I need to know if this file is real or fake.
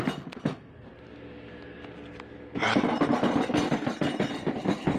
real